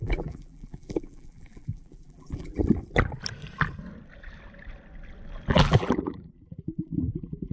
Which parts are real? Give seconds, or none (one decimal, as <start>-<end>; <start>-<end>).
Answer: 2.6-5.5